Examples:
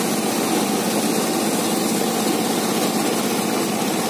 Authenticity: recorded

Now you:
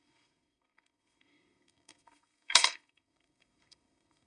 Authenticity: remade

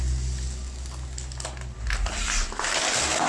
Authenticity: recorded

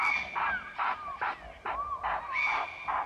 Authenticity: recorded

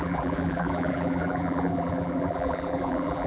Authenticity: remade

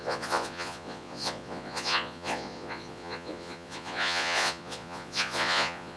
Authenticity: remade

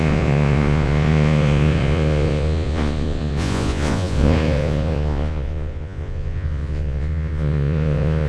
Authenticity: remade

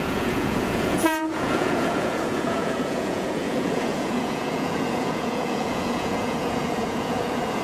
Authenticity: remade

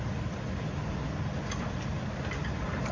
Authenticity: recorded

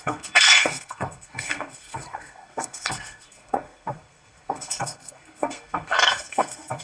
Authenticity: remade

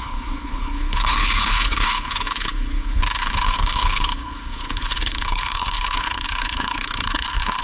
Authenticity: remade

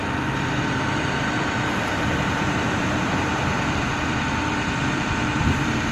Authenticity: remade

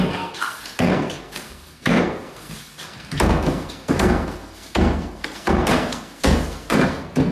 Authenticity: remade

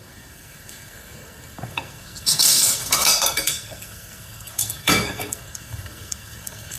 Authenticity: remade